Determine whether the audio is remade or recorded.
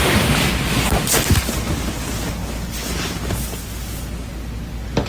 recorded